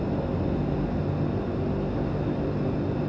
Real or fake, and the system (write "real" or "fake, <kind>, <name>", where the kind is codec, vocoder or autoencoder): real